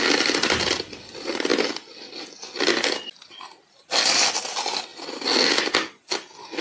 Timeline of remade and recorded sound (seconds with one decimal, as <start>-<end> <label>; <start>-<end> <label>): 0.0-6.6 recorded